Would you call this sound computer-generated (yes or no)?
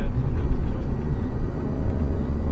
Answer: yes